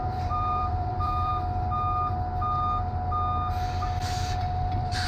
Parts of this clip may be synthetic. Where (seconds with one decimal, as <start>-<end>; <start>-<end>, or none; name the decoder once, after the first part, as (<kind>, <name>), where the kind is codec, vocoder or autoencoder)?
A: 0.0-1.3 (vocoder, BigVGAN v2); 4.4-5.1